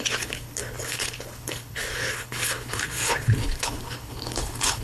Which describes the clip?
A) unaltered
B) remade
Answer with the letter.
B